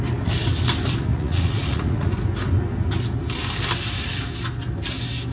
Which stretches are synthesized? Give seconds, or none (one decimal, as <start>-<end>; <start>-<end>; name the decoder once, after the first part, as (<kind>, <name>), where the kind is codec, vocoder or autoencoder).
1.1-2.1 (vocoder, Vocos)

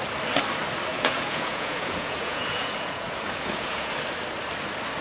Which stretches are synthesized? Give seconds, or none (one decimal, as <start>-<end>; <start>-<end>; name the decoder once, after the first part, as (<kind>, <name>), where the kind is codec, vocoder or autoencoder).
0.9-3.9 (vocoder, Vocos)

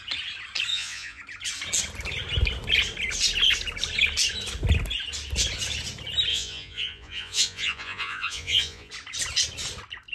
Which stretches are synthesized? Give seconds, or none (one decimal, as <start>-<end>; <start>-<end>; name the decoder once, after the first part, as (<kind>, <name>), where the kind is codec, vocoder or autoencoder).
0.7-1.2 (vocoder, Vocos); 6.3-8.9

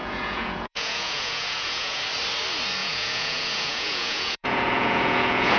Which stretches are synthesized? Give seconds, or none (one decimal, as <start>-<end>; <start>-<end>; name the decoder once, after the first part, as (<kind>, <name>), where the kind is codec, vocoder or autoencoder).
0.0-2.0 (vocoder, Vocos); 2.8-5.6

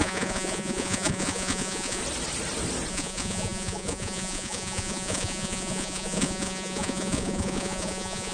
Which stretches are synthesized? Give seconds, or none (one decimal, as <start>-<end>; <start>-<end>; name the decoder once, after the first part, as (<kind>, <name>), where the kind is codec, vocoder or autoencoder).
0.0-2.0 (vocoder, Vocos); 2.9-8.3